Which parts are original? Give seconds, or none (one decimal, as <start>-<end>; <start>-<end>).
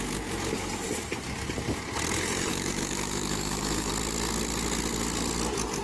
0.0-2.5; 3.9-5.8